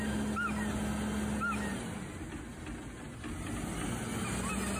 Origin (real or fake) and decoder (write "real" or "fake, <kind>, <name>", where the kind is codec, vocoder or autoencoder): real